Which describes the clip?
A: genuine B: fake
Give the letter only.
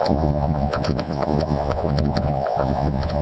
B